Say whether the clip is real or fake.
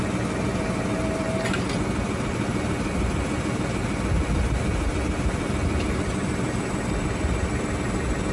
real